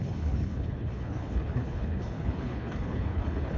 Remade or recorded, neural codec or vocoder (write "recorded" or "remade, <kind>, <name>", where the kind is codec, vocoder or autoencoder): remade, codec, HILCodec